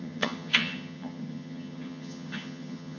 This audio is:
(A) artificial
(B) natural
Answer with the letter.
A